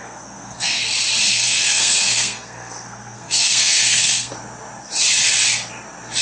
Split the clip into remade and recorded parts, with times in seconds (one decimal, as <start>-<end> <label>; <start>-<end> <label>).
0.0-0.8 remade; 0.8-1.3 recorded; 1.3-4.3 remade; 4.3-6.2 recorded